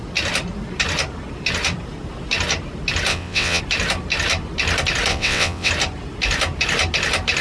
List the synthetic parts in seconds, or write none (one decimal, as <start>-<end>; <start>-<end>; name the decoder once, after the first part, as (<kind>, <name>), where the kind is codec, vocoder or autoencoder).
3.1-3.6 (vocoder, WaveNeXt); 5.1-5.7